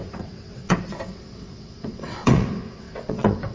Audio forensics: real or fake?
fake